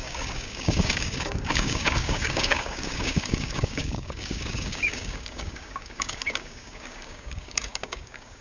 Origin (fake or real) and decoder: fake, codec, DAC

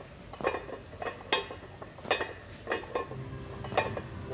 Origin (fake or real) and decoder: real